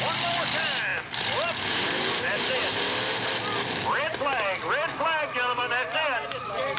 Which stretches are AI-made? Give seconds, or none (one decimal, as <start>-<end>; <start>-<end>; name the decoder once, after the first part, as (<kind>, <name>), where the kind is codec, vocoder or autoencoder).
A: 0.9-4.2 (vocoder, BigVGAN v2)